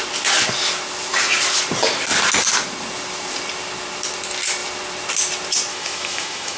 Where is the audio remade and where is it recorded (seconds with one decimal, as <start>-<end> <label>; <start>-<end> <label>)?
0.0-5.7 recorded; 5.7-6.6 remade